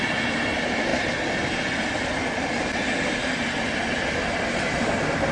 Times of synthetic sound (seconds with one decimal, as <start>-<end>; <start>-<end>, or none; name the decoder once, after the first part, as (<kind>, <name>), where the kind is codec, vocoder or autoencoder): 0.0-0.9 (vocoder, BigVGAN v2); 4.1-5.3